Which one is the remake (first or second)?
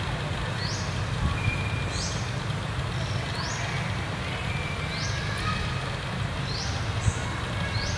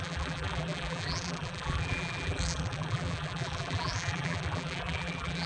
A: second